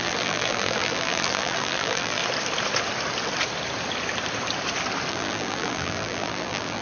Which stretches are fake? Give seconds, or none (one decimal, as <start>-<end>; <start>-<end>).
0.0-2.2; 5.1-6.8